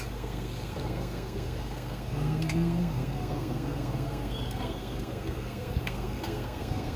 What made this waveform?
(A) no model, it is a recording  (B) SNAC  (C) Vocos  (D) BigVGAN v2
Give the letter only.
B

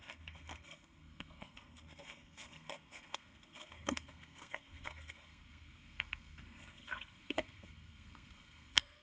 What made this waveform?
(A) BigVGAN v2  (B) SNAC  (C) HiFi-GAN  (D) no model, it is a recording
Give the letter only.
B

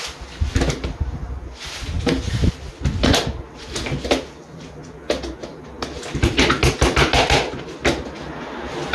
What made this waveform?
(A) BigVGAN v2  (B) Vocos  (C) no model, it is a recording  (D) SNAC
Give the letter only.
C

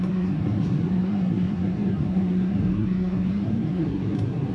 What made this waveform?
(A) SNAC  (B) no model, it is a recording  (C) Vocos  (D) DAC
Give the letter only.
A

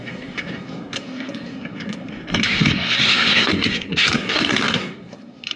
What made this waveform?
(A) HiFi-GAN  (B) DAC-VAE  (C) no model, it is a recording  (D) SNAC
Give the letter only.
D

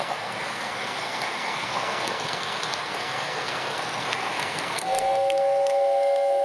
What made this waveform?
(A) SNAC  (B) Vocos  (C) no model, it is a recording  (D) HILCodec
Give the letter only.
A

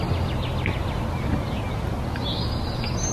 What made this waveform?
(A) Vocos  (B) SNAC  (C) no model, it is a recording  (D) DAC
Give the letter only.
C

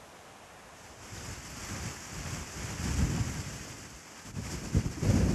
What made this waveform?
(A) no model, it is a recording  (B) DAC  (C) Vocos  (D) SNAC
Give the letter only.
A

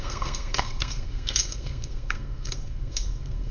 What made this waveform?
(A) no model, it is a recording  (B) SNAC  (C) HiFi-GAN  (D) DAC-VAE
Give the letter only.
B